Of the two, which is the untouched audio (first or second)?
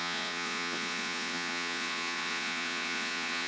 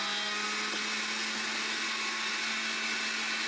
second